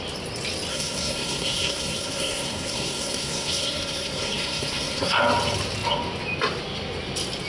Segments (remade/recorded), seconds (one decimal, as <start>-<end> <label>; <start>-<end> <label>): 0.0-0.7 recorded; 0.7-5.2 remade; 5.2-7.5 recorded